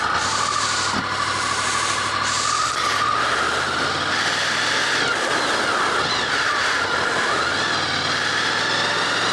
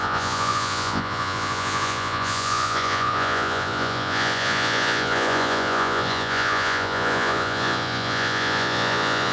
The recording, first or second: first